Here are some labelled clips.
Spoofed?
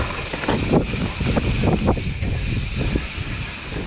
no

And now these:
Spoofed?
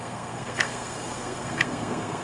yes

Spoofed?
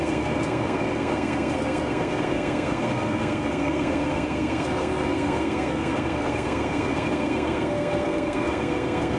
yes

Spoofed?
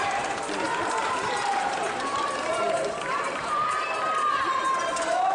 yes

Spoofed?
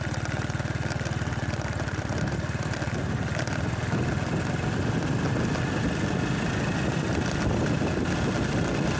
no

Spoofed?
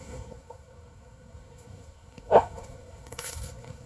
yes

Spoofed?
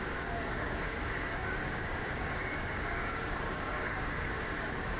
yes